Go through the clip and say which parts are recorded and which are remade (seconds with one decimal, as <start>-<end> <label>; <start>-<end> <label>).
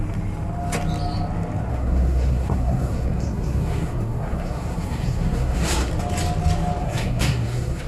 0.0-1.7 recorded; 1.7-5.9 remade; 5.9-6.8 recorded; 6.8-7.9 remade